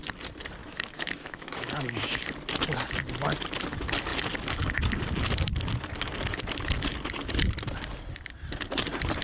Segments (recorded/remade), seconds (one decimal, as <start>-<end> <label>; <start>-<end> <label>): 0.0-0.6 recorded; 0.6-2.2 remade; 2.2-9.2 recorded